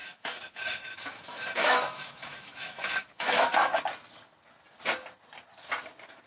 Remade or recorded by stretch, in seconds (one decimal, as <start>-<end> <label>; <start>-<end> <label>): 0.0-3.8 remade; 3.8-6.3 recorded